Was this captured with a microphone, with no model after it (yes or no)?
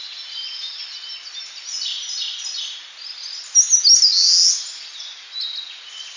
yes